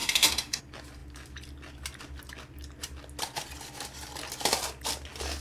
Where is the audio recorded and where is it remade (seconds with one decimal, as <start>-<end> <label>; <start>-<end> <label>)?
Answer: 0.0-0.6 remade; 0.6-5.4 recorded